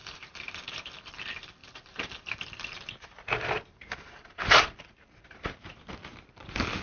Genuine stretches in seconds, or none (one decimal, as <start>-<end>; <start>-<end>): 1.2-1.6; 5.7-6.8